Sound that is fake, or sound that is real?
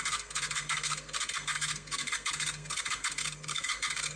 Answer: fake